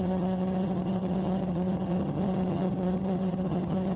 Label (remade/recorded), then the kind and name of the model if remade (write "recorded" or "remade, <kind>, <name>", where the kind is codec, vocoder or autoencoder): remade, vocoder, HiFi-GAN